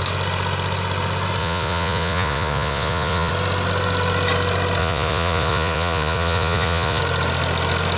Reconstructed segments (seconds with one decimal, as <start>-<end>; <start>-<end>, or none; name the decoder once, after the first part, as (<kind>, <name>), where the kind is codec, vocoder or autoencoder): 1.4-3.3 (vocoder, Vocos); 4.8-7.0